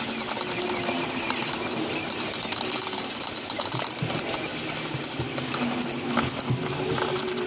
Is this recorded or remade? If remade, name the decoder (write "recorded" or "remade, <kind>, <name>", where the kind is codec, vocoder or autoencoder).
recorded